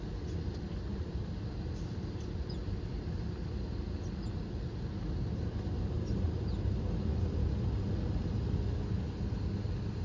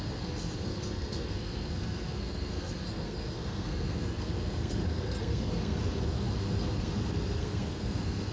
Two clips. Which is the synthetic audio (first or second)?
second